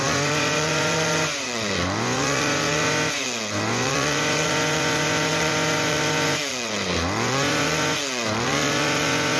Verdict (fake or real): fake